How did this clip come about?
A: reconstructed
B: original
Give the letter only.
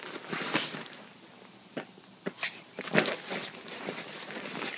B